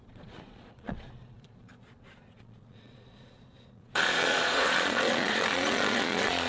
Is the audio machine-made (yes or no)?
yes